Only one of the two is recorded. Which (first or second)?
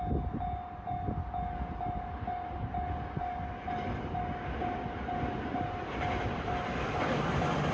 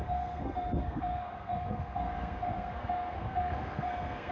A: first